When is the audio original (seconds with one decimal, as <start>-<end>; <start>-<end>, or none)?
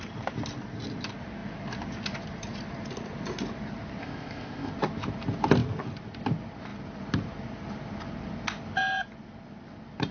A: 0.0-4.0; 4.7-10.1